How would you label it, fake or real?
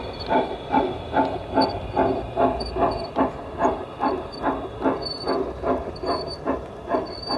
real